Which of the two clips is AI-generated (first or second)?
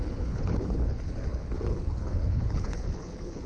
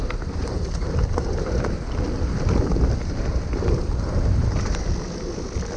first